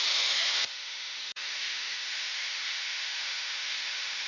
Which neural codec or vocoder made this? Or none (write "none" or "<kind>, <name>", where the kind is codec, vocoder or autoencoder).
autoencoder, DAC-VAE